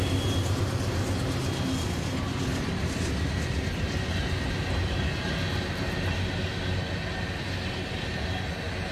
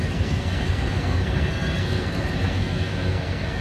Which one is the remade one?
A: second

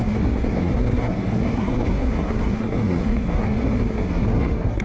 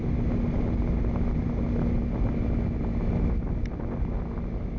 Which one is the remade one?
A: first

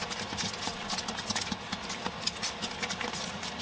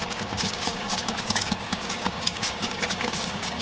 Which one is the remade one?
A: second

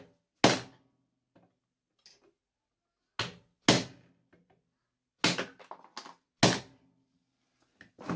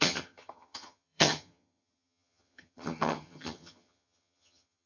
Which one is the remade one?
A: second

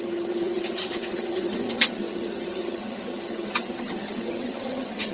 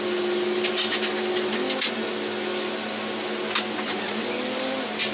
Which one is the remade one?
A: first